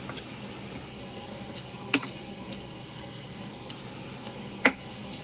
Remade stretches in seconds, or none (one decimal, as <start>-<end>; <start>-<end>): 0.9-3.7; 4.2-5.2